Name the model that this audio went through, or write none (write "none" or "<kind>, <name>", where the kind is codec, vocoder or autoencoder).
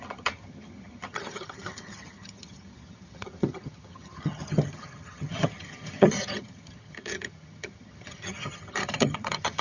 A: vocoder, HiFi-GAN